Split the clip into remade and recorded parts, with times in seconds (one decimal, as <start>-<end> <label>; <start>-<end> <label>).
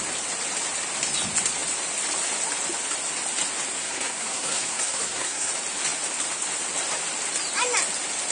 0.0-3.8 recorded; 3.8-5.5 remade; 5.5-8.3 recorded